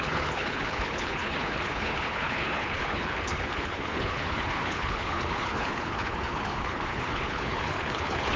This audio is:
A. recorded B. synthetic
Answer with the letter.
B